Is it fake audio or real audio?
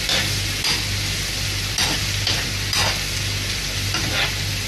real